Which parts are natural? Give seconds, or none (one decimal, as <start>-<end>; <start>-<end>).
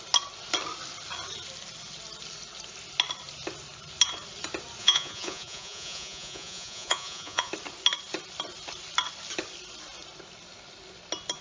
0.0-4.8; 7.5-11.4